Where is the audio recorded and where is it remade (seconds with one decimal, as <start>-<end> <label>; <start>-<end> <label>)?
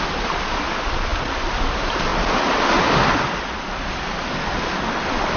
0.0-2.1 remade; 2.1-4.8 recorded; 4.8-5.4 remade